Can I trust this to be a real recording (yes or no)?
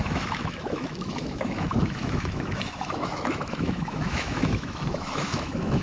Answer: no